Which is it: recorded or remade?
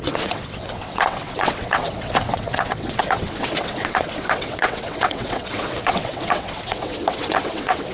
remade